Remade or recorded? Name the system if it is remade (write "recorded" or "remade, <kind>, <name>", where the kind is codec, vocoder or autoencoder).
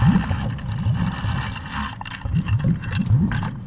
recorded